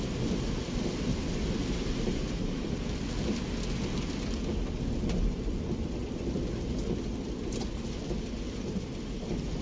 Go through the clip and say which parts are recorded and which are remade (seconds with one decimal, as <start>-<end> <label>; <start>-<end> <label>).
0.0-1.6 recorded; 1.6-2.6 remade; 2.6-9.6 recorded

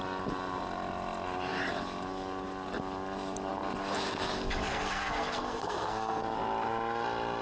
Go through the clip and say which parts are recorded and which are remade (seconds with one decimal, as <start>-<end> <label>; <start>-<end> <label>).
0.0-4.7 recorded; 4.7-6.2 remade; 6.2-7.4 recorded

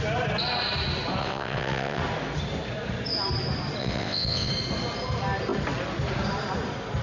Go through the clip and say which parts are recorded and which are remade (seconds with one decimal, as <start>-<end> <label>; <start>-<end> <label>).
0.0-1.2 recorded; 1.2-2.0 remade; 2.0-3.8 recorded; 3.8-4.5 remade; 4.5-7.0 recorded

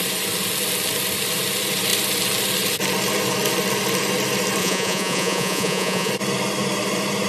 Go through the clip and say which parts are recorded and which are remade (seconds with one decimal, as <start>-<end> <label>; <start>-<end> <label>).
0.0-4.6 recorded; 4.6-6.1 remade; 6.1-7.3 recorded

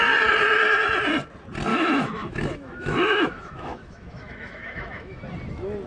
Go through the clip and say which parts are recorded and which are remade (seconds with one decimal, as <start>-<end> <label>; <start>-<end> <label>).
0.0-1.7 recorded; 1.7-5.2 remade; 5.2-5.9 recorded

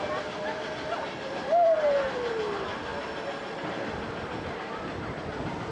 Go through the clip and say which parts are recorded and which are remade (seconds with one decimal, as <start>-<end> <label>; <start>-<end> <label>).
0.0-5.7 recorded

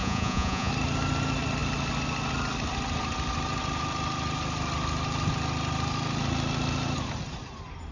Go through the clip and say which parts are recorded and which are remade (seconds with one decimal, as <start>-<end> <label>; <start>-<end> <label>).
0.0-0.7 remade; 0.7-7.9 recorded